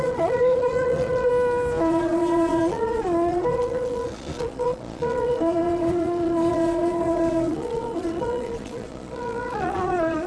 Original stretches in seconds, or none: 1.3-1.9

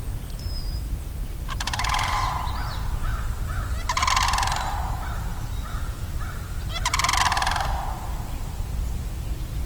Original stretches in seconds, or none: 0.0-5.3; 6.3-6.9; 9.0-9.7

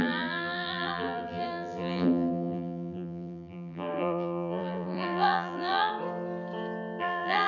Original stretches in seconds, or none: 5.9-7.0

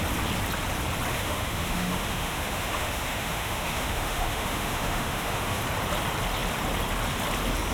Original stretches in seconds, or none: 0.0-1.1; 5.6-7.7

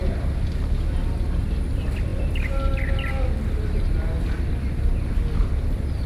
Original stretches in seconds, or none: 0.0-6.1

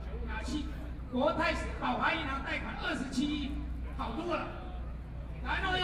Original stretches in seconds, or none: 0.5-4.0; 4.4-5.3

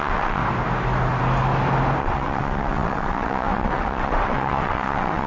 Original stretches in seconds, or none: 0.4-2.0

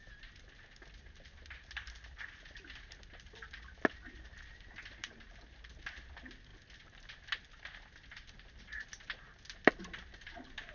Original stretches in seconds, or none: 0.0-10.7